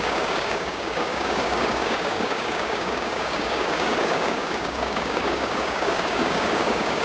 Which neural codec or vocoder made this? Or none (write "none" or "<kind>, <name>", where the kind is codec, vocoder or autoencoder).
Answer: codec, DAC